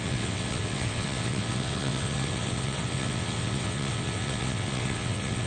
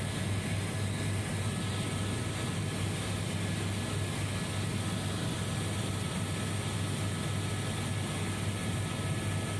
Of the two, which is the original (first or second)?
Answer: second